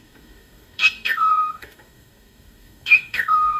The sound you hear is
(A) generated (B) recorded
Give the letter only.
A